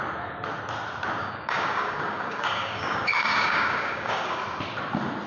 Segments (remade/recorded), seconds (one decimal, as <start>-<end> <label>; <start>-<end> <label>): 0.0-1.2 recorded; 1.2-4.4 remade; 4.4-5.3 recorded